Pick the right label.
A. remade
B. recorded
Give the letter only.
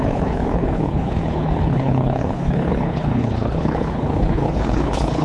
A